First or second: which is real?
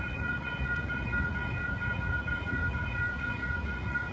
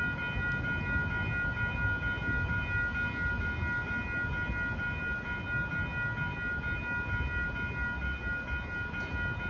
second